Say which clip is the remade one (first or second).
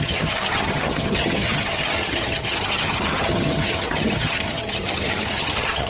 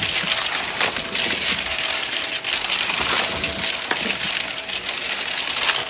first